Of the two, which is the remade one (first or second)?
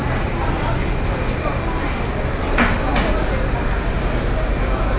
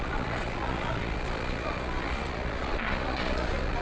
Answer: second